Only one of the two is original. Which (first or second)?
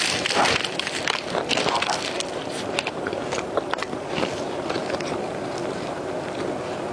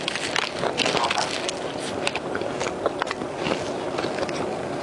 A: second